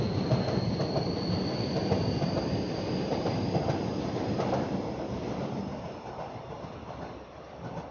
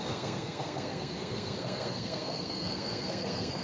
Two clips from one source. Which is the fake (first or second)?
second